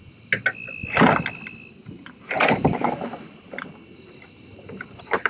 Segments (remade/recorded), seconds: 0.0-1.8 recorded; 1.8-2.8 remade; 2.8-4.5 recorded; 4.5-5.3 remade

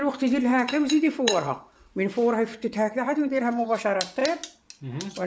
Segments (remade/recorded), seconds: 0.0-0.5 recorded; 0.5-1.9 remade; 1.9-2.5 recorded; 2.5-3.8 remade; 3.8-5.3 recorded

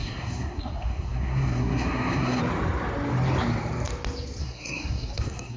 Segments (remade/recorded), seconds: 0.0-2.4 remade; 2.4-4.4 recorded; 4.4-5.6 remade

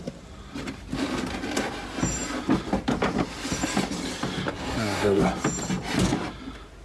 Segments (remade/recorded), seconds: 0.0-4.5 recorded; 4.5-5.2 remade; 5.2-6.8 recorded

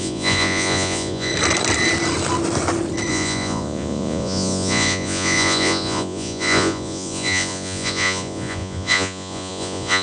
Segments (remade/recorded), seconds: 0.0-1.3 remade; 1.3-3.1 recorded; 3.1-10.0 remade

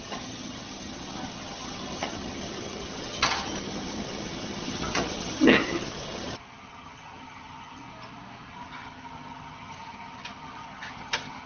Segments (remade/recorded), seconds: 0.0-7.8 remade; 7.8-8.5 recorded; 8.5-11.5 remade

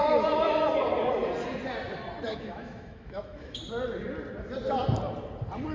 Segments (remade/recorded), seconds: 0.0-2.3 recorded; 2.3-3.6 remade; 3.6-5.7 recorded

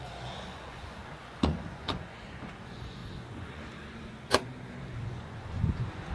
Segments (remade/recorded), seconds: 0.0-4.5 remade; 4.5-5.0 recorded; 5.0-6.1 remade